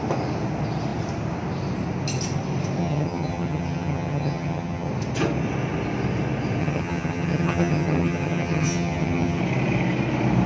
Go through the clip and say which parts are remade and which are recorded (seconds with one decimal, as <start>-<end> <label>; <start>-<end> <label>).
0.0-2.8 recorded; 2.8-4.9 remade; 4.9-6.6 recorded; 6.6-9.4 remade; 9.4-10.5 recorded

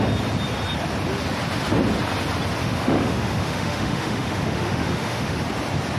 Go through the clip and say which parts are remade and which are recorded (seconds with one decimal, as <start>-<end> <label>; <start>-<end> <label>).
0.0-2.6 recorded; 2.6-5.4 remade; 5.4-6.0 recorded

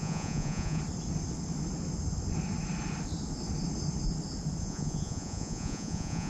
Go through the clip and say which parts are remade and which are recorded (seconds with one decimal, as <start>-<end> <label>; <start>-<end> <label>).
0.0-0.8 remade; 0.8-4.6 recorded; 4.6-6.3 remade

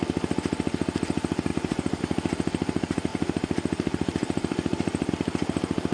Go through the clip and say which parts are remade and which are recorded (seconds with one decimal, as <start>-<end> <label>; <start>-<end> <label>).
0.0-1.5 recorded; 1.5-2.0 remade; 2.0-3.1 recorded; 3.1-5.1 remade; 5.1-5.9 recorded

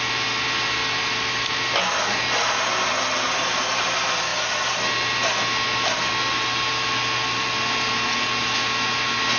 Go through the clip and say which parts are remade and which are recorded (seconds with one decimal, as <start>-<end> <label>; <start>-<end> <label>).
0.0-9.4 recorded

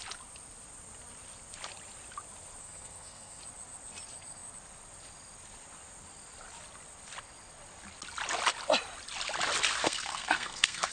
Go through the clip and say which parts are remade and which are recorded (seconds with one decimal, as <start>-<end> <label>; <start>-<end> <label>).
0.0-2.6 recorded; 2.6-3.4 remade; 3.4-9.8 recorded; 9.8-10.9 remade